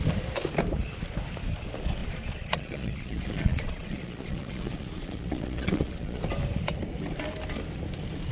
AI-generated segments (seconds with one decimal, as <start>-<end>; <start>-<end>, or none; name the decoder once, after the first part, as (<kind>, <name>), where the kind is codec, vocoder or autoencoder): 2.0-6.2 (vocoder, Vocos)